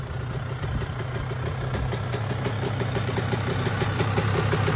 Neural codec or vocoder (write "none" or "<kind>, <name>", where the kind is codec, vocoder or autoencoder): none